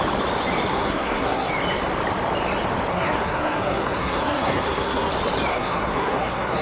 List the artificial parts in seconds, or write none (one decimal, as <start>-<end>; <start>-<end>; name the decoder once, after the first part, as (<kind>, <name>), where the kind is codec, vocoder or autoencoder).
0.7-1.5 (codec, SNAC); 2.9-5.1; 5.5-6.6